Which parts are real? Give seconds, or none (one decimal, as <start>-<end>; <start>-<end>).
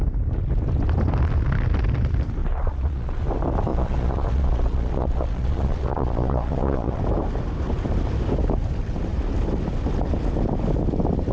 0.0-2.4; 3.2-3.7; 7.0-11.3